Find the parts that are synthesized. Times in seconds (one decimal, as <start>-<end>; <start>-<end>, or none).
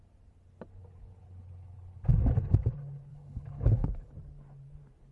3.1-4.1